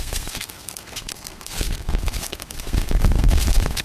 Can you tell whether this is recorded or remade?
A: remade